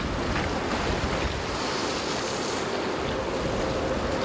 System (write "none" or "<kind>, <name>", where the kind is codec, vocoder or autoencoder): none